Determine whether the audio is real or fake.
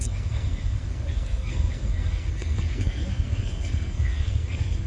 fake